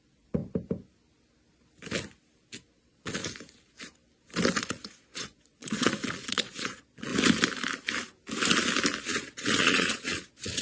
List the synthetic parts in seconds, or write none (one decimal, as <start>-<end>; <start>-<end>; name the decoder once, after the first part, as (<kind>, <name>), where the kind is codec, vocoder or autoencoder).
0.0-0.4 (vocoder, Vocos); 2.8-3.2; 4.6-7.1; 9.0-10.6